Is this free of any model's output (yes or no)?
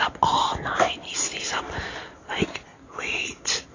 yes